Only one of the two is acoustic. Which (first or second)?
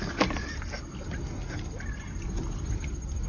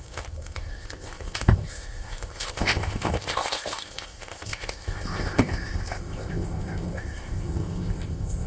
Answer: first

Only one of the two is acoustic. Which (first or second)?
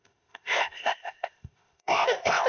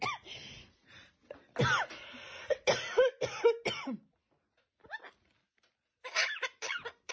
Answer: second